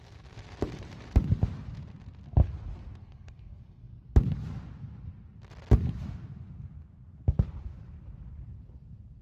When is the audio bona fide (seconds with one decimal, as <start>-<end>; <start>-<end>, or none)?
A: 0.0-3.0; 3.9-9.2